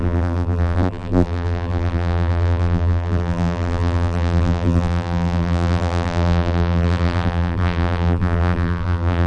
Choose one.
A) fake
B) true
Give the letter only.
A